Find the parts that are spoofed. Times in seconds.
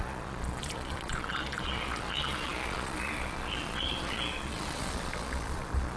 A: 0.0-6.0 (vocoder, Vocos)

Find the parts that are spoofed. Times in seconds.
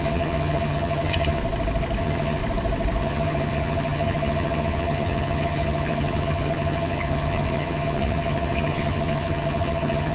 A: 0.0-1.4 (vocoder, HiFi-GAN); 2.0-2.4; 3.0-10.1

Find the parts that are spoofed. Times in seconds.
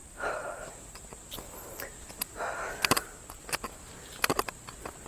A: none